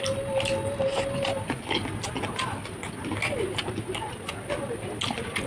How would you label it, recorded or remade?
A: recorded